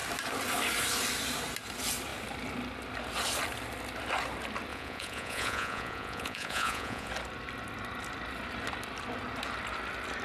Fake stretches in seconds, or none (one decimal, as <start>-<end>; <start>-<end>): 4.7-7.1